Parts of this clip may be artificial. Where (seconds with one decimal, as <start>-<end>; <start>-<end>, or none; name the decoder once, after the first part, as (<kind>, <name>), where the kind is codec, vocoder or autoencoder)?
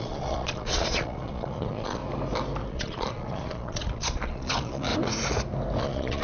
0.0-2.0 (vocoder, Vocos); 2.7-4.9; 5.8-6.2